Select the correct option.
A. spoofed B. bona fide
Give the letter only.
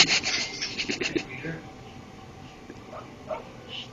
B